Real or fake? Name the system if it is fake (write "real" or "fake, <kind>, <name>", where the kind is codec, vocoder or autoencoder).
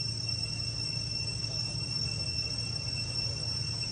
real